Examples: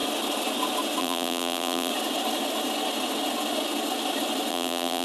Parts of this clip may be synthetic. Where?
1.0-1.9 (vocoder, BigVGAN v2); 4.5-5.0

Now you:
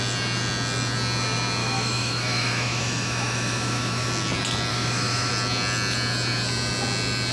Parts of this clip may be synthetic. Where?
1.6-4.1 (autoencoder, DAC-VAE); 4.7-5.3

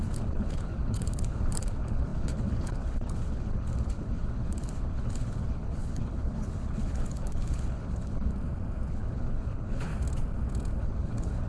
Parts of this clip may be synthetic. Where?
0.0-8.3 (codec, HILCodec); 8.9-9.9; 10.8-11.5

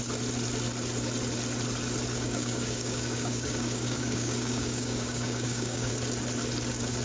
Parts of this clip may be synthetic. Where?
2.1-5.9 (codec, DAC)

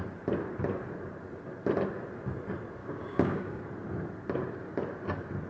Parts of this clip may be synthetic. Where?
2.8-3.6 (codec, DAC)

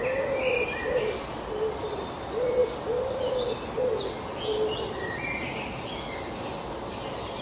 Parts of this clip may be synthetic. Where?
none

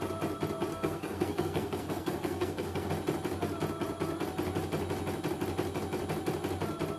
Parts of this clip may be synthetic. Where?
0.7-2.9 (codec, SNAC)